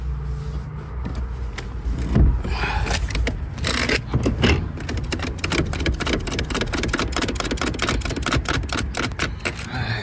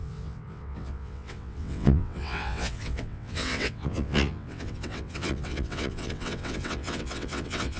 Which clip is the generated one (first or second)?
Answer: second